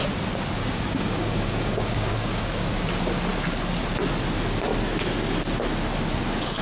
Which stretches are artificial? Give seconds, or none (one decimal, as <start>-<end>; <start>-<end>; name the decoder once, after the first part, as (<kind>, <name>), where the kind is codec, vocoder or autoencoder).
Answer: 0.6-2.5 (codec, DAC)